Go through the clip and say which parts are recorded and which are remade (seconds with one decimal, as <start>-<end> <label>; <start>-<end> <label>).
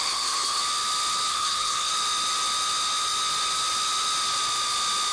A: 0.0-0.6 remade; 0.6-1.3 recorded; 1.3-1.9 remade; 1.9-5.1 recorded